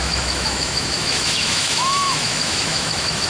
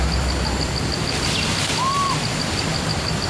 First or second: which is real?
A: second